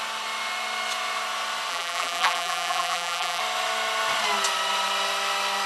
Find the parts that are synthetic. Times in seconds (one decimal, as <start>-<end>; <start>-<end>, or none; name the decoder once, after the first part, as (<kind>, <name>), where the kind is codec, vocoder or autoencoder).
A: 1.7-3.4 (vocoder, BigVGAN v2)